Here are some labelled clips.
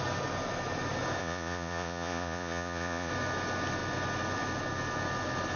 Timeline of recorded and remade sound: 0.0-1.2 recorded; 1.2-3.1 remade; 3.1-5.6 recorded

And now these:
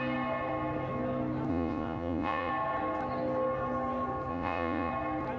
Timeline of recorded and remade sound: 0.0-1.5 recorded; 1.5-2.5 remade; 2.5-4.3 recorded; 4.3-4.9 remade; 4.9-5.4 recorded

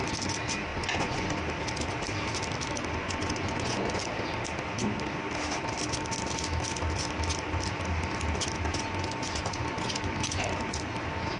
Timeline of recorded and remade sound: 0.0-0.7 recorded; 0.7-1.4 remade; 1.4-3.0 recorded; 3.0-4.0 remade; 4.0-8.7 recorded; 8.7-10.6 remade; 10.6-11.4 recorded

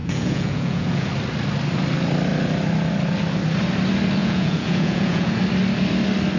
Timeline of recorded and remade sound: 0.0-1.1 remade; 1.1-4.2 recorded; 4.2-5.4 remade; 5.4-6.4 recorded

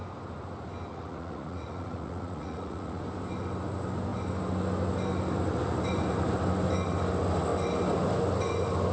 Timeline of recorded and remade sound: 0.0-0.9 recorded; 0.9-3.0 remade; 3.0-8.9 recorded

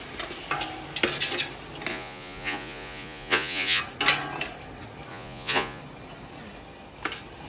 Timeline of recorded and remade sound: 0.0-1.9 recorded; 1.9-3.8 remade; 3.8-5.1 recorded; 5.1-5.8 remade; 5.8-7.5 recorded